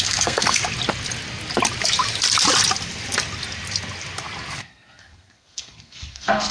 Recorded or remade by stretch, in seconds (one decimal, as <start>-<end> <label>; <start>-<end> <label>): 0.0-0.6 remade; 0.6-4.5 recorded; 4.5-6.5 remade

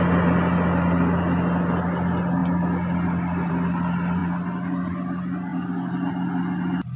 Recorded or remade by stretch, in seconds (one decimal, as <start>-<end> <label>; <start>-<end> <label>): 0.0-7.0 recorded